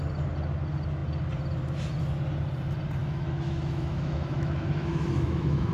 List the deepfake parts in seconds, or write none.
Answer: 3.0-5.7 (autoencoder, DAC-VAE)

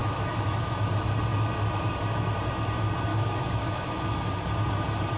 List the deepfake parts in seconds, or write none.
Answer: 0.0-0.9 (autoencoder, DAC-VAE); 3.1-4.3